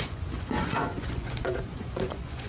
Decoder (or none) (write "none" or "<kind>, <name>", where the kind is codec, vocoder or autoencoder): vocoder, Vocos